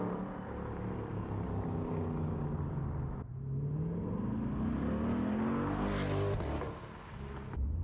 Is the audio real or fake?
real